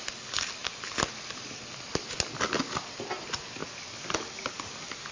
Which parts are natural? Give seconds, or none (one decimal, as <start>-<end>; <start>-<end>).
0.0-5.1